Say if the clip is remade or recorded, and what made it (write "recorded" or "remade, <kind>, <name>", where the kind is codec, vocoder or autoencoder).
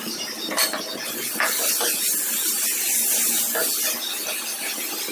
recorded